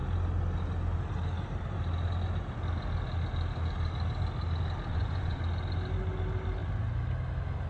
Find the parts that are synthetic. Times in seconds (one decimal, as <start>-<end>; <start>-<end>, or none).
4.9-5.4